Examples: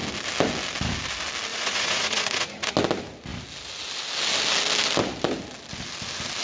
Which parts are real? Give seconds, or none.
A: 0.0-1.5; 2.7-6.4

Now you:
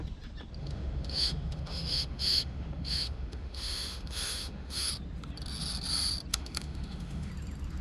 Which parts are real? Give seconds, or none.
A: 0.0-0.6; 4.9-6.3; 7.3-7.8

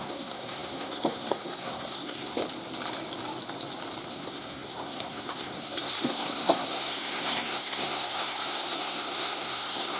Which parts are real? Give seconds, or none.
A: 2.4-4.1

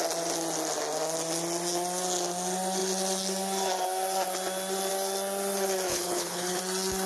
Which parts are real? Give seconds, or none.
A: 0.0-5.9; 6.6-7.1

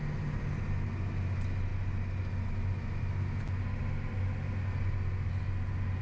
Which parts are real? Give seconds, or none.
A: 0.0-6.0

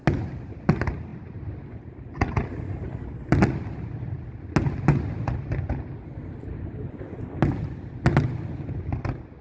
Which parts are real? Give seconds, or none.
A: 0.0-9.4